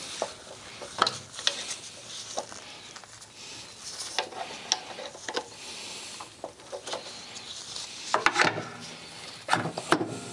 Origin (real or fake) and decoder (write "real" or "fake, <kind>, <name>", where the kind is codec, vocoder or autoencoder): real